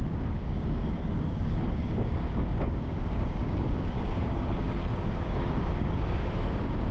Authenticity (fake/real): fake